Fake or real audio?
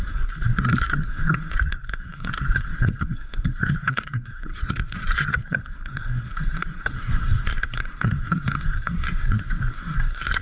fake